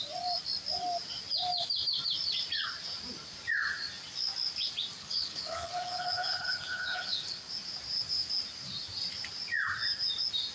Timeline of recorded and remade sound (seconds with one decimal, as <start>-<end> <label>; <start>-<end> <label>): 0.0-5.0 recorded; 5.0-7.5 remade; 7.5-10.5 recorded